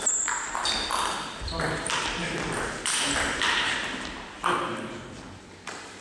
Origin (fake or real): real